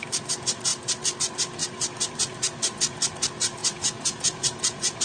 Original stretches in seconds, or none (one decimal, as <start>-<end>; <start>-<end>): 0.0-3.6